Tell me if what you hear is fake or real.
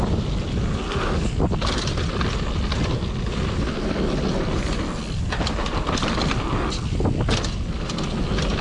real